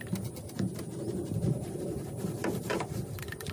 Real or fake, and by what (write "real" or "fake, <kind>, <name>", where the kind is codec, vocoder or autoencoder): real